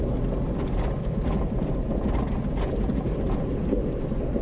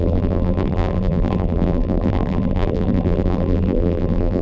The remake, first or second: second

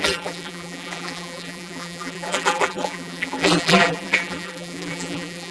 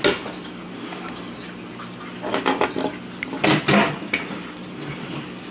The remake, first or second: first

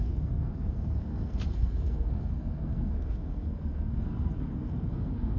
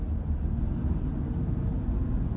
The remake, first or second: first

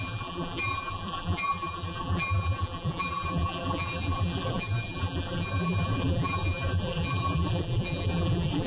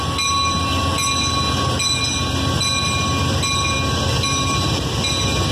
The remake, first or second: first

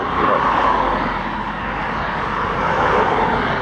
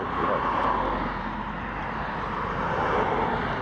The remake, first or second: first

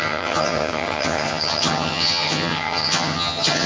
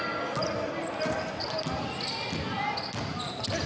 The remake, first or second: first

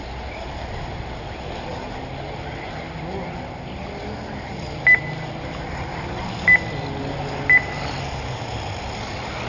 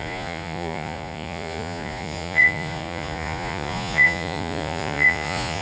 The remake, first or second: second